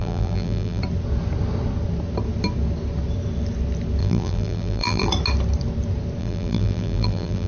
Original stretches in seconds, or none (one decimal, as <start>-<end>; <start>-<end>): 0.8-4.0; 5.1-6.2